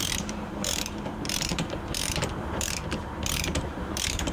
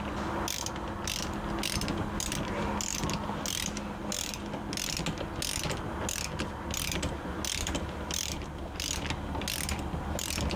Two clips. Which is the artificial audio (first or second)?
first